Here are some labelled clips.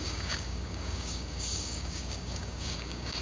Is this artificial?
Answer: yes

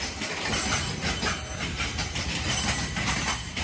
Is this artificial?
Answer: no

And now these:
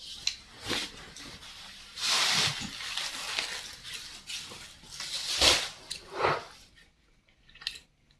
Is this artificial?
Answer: no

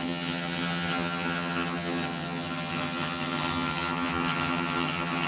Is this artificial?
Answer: yes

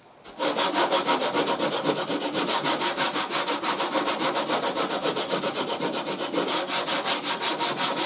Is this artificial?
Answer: no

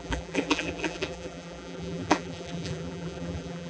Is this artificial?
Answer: yes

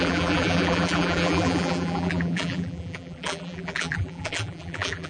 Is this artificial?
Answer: yes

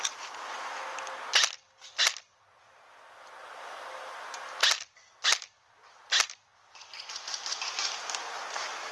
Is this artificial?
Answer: no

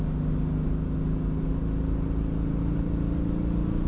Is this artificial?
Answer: no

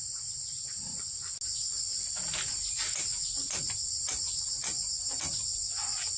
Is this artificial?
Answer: no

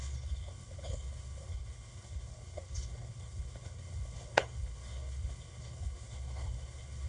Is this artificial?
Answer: yes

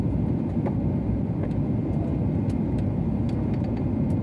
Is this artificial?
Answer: no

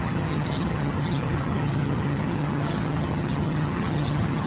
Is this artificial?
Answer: yes